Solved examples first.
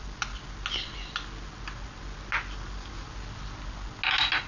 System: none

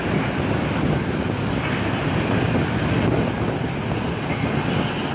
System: none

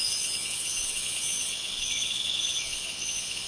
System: vocoder, Vocos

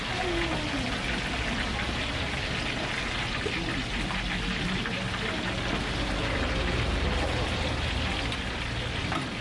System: none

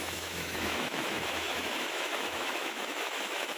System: autoencoder, DAC-VAE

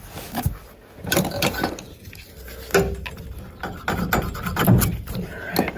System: none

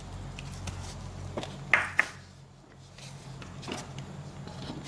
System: none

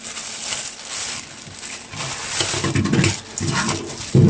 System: none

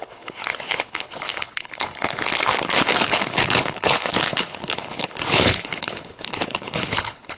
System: codec, HILCodec